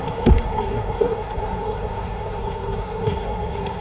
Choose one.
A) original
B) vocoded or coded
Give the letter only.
B